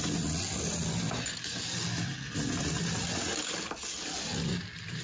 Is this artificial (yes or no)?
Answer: no